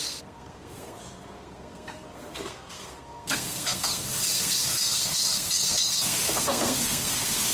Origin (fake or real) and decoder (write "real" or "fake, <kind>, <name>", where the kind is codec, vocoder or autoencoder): fake, codec, SNAC